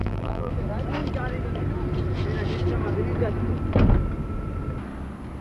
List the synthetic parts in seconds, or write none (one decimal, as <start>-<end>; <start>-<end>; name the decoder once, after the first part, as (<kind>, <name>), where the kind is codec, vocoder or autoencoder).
0.0-0.5 (vocoder, BigVGAN v2)